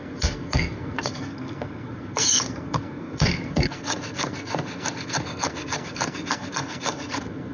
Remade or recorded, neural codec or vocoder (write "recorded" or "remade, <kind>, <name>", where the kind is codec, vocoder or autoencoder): remade, codec, SNAC